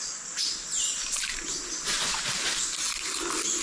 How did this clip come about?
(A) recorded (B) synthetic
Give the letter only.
A